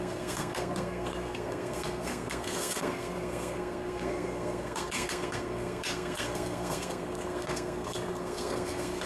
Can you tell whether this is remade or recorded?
remade